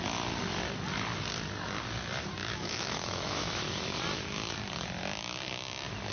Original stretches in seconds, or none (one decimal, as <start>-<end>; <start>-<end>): 0.0-2.4; 3.6-6.1